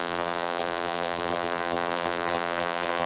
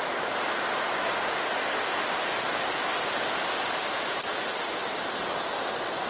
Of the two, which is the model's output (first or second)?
first